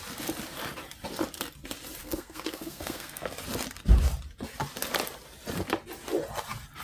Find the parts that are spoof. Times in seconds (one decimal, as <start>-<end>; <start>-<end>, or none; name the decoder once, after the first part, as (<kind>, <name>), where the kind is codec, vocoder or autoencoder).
2.0-3.3 (codec, SNAC)